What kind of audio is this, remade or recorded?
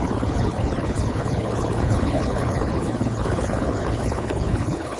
remade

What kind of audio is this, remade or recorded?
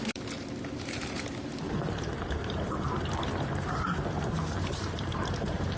remade